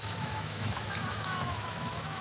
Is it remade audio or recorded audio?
remade